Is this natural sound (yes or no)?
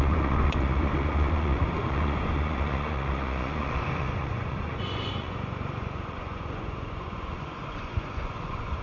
no